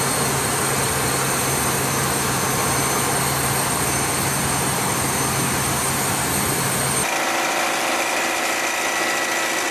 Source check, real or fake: real